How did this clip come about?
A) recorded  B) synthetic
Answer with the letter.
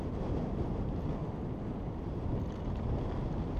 A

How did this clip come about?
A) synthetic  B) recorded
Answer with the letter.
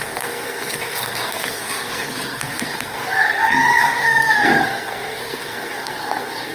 A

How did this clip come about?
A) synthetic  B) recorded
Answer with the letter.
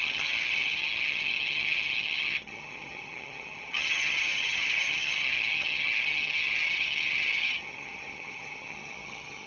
A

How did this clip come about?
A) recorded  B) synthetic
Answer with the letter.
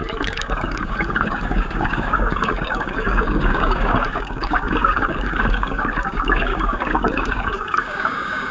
B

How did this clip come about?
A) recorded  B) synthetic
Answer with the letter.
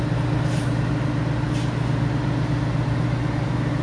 A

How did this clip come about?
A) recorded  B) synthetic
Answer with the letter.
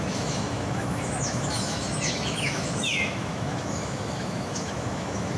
B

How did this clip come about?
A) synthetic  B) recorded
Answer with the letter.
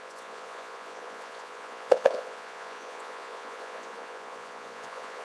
A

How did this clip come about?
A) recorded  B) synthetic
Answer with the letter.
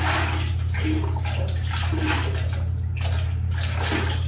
A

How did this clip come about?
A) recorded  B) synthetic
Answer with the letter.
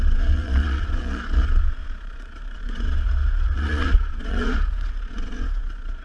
B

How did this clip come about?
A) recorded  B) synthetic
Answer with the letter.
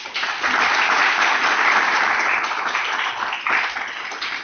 A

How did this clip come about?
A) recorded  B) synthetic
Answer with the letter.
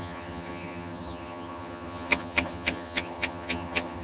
B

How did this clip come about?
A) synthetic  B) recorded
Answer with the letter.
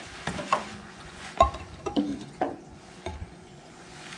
A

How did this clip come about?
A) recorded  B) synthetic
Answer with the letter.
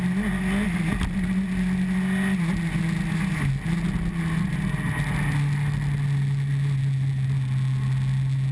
A